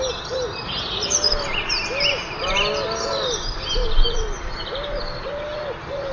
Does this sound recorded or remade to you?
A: recorded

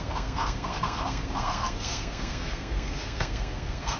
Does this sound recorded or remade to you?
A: remade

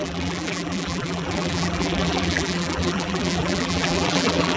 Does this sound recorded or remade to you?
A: remade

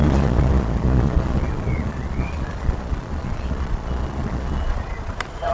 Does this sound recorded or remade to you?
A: remade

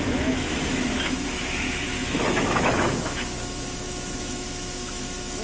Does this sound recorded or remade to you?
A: remade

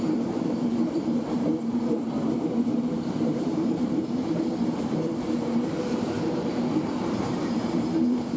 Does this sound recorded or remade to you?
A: remade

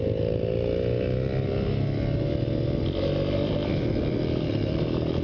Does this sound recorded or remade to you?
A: recorded